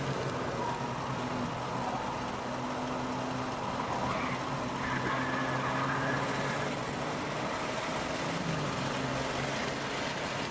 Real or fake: real